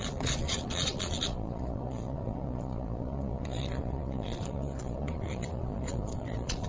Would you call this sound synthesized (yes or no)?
yes